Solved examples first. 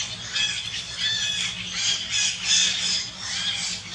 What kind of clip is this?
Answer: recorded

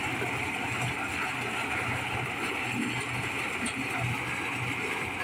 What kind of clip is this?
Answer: recorded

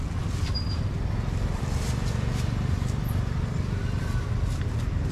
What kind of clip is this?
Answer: recorded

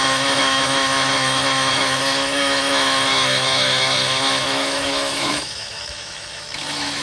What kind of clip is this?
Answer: remade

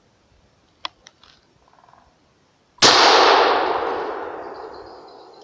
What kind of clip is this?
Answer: recorded